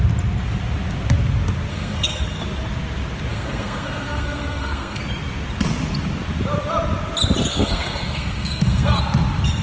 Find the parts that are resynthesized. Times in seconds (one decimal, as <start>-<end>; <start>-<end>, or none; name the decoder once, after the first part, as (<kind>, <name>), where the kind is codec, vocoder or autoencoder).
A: 1.7-2.2 (codec, SNAC); 3.3-5.0; 7.5-9.0